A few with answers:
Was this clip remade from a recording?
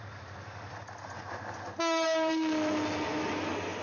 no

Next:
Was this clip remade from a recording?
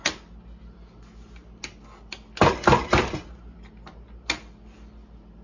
no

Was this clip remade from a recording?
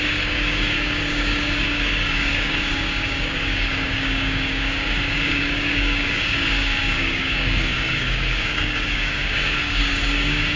yes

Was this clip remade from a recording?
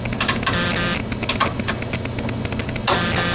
no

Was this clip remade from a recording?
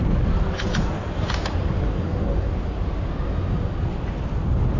no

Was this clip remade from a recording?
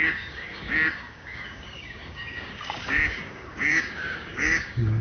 yes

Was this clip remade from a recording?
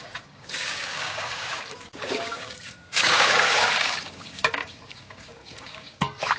yes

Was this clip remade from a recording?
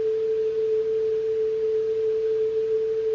no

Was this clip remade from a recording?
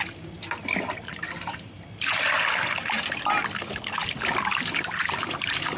no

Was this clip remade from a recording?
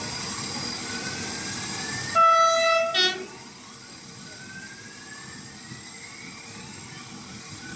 no